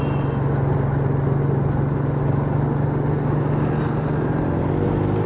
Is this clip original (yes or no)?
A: yes